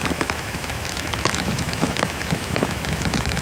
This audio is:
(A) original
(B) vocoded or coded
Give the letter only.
B